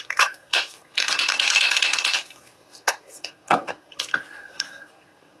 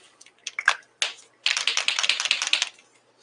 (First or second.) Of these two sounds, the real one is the second